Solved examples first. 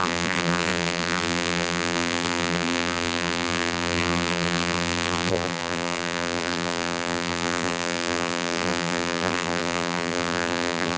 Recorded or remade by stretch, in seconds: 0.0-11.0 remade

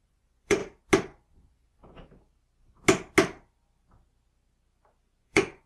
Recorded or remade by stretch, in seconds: 0.0-0.6 remade; 0.6-1.3 recorded; 1.3-1.8 remade; 1.8-5.2 recorded; 5.2-5.7 remade

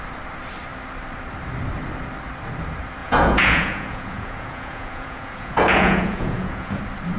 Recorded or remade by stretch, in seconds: 0.0-3.0 recorded; 3.0-6.8 remade; 6.8-7.2 recorded

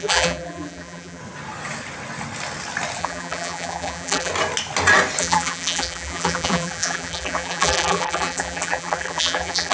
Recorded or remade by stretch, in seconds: 0.0-1.2 remade; 1.2-3.0 recorded; 3.0-4.3 remade; 4.3-5.2 recorded; 5.2-9.7 remade

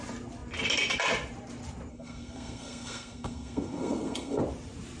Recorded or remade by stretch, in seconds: 0.0-1.9 recorded; 1.9-4.4 remade; 4.4-5.0 recorded

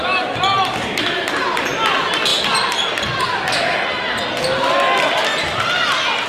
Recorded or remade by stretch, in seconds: 0.0-6.3 recorded